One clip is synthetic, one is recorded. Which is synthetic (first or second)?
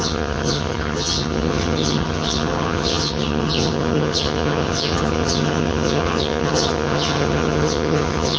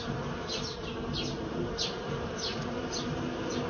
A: first